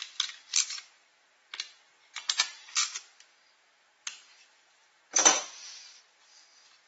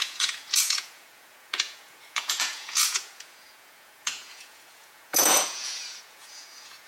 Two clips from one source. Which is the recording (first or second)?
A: first